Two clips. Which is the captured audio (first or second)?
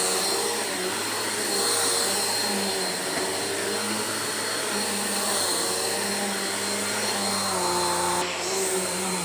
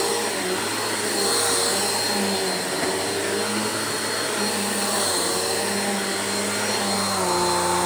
second